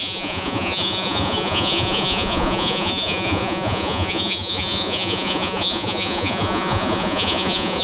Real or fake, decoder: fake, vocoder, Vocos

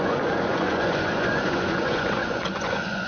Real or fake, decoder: fake, vocoder, Vocos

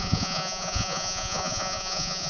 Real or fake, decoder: fake, vocoder, Vocos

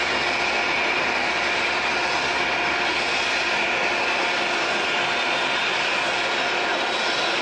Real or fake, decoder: real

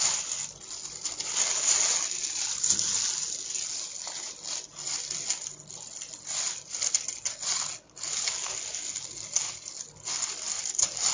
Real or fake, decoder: real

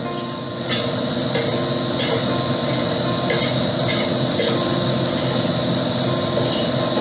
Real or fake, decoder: real